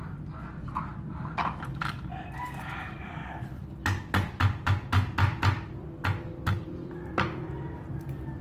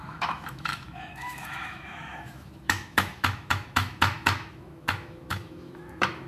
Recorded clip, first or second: first